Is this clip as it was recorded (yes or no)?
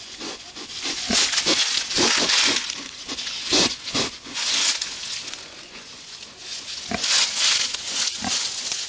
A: no